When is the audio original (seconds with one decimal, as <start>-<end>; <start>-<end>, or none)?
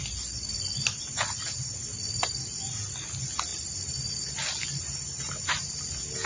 0.0-3.5; 4.1-6.3